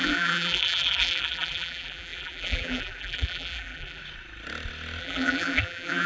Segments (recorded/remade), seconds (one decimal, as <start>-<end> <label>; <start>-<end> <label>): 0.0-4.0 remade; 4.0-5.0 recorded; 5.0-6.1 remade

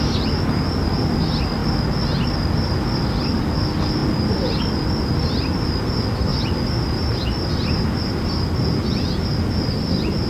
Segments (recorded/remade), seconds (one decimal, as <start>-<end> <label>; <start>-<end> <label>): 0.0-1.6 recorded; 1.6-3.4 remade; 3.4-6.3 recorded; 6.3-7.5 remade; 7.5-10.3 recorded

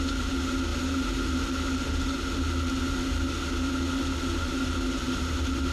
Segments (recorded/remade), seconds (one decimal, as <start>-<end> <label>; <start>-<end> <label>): 0.0-0.7 recorded; 0.7-1.9 remade; 1.9-5.7 recorded